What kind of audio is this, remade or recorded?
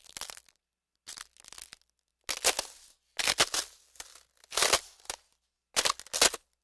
recorded